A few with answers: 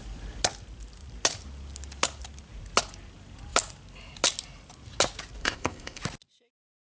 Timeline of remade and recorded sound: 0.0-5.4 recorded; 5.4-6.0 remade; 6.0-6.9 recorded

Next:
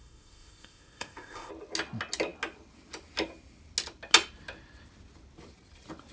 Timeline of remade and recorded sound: 0.0-1.5 remade; 1.5-6.1 recorded

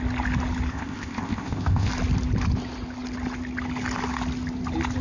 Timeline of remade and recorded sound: 0.0-0.7 recorded; 0.7-1.9 remade; 1.9-5.0 recorded

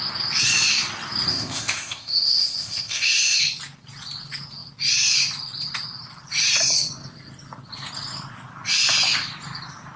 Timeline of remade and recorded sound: 0.0-1.3 recorded; 1.3-3.4 remade; 3.4-10.0 recorded

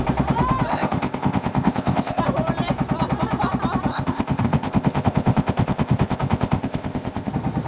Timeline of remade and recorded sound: 0.0-0.7 recorded; 0.7-2.2 remade; 2.2-3.9 recorded; 3.9-7.3 remade; 7.3-7.7 recorded

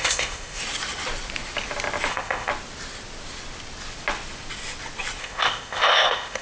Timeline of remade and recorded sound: 0.0-0.6 remade; 0.6-2.1 recorded; 2.1-2.5 remade; 2.5-5.2 recorded; 5.2-6.4 remade

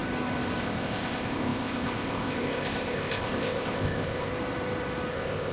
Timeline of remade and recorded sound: 0.0-0.6 recorded; 0.6-4.3 remade; 4.3-5.1 recorded; 5.1-5.5 remade